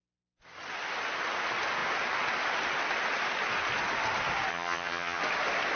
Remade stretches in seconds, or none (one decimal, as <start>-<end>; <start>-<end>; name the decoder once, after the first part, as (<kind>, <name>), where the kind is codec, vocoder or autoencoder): 4.5-5.2 (vocoder, HiFi-GAN)